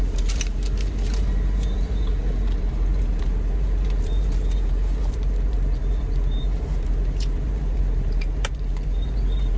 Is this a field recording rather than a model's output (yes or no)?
no